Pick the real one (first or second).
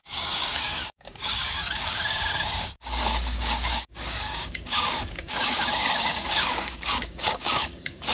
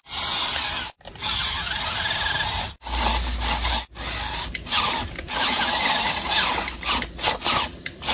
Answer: second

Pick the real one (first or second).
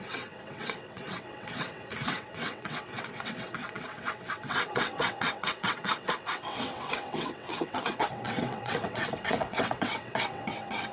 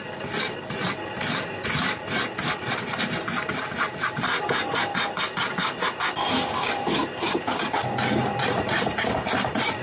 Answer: second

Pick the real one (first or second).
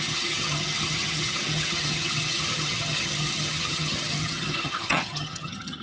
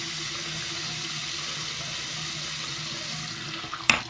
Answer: second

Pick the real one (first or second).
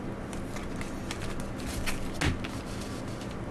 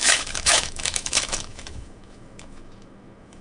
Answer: first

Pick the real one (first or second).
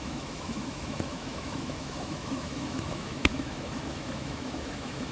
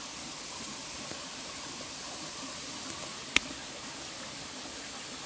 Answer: second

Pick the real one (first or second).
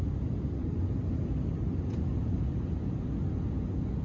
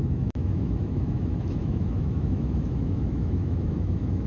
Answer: first